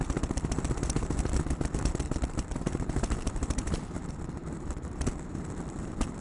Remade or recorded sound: remade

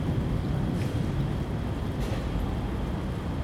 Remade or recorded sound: recorded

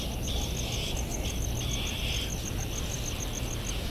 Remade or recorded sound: recorded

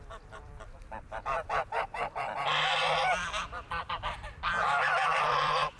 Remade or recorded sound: remade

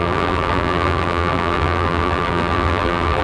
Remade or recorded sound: remade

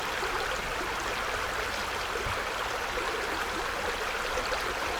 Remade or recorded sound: recorded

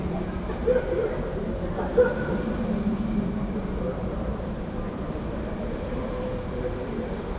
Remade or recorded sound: remade